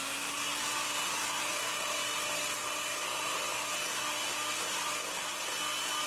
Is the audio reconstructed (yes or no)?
no